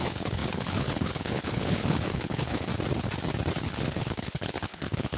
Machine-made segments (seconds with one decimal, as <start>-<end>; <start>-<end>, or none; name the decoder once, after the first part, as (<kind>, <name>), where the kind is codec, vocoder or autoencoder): 0.0-2.7 (codec, HILCodec); 3.6-5.2